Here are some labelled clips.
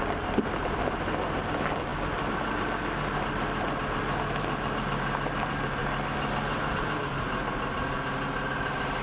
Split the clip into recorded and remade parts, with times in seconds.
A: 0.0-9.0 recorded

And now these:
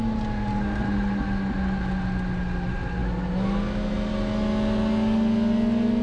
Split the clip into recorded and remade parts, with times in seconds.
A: 0.0-6.0 recorded

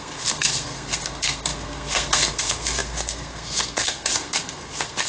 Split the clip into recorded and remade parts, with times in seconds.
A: 0.0-5.1 remade

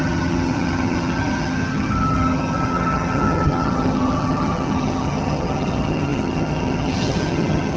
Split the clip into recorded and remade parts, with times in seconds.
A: 0.0-7.8 remade

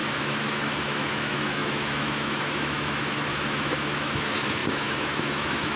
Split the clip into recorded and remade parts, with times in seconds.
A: 0.0-5.8 remade

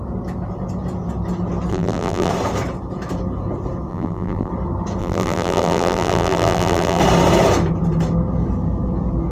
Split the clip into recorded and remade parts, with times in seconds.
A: 0.0-1.7 recorded; 1.7-2.3 remade; 2.3-3.9 recorded; 3.9-4.5 remade; 4.5-5.0 recorded; 5.0-7.0 remade; 7.0-9.3 recorded